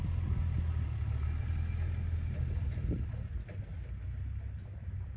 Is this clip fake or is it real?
real